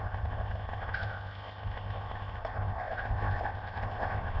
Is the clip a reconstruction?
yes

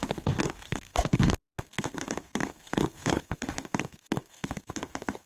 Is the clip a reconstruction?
yes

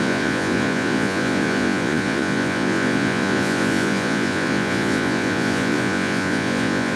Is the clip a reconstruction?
yes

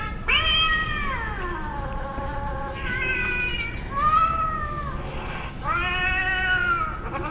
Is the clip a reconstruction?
no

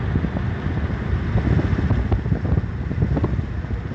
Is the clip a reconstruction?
no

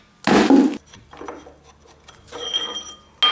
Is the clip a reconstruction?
no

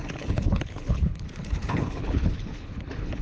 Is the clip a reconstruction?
yes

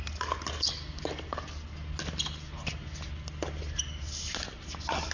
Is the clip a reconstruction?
no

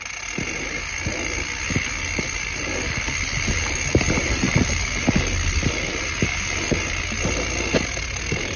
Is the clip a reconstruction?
no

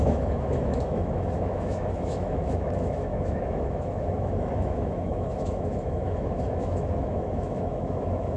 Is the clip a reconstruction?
yes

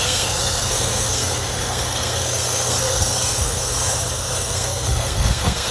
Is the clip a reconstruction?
yes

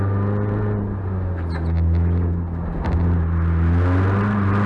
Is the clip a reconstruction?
no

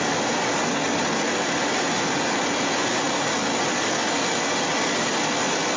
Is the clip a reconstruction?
no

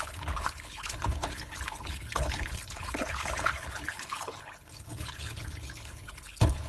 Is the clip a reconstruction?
yes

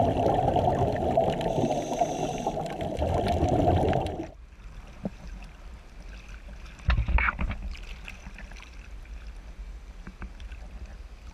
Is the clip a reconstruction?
no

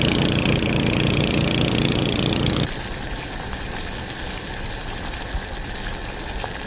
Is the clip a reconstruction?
no